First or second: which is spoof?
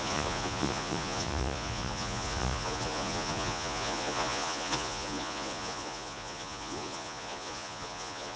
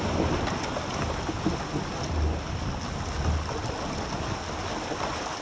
first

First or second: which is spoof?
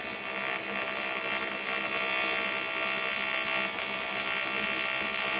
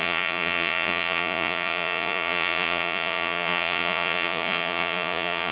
second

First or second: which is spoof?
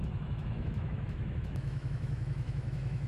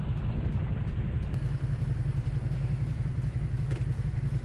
first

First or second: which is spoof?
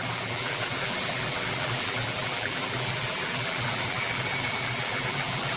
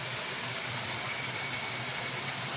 first